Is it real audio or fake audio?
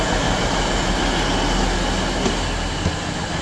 real